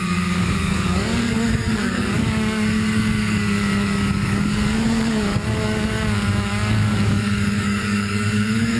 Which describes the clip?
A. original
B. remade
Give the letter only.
B